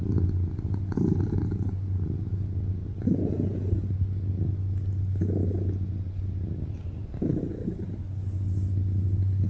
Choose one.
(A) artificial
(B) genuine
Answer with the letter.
B